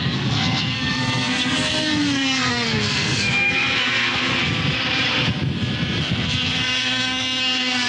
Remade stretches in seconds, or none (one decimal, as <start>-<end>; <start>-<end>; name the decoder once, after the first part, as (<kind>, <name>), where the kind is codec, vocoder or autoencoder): 0.0-4.3 (codec, SNAC); 6.0-7.9